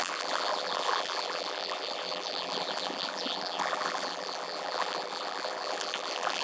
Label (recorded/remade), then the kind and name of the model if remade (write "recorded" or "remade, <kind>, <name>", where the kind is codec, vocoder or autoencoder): remade, vocoder, BigVGAN v2